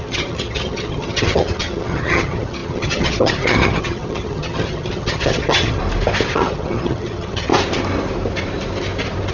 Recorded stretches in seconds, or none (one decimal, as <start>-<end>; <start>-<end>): 5.8-6.3; 7.5-9.3